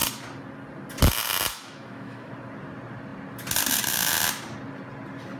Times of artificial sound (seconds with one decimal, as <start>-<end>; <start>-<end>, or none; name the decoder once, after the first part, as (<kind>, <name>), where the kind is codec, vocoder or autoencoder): 1.5-2.3 (autoencoder, DAC-VAE)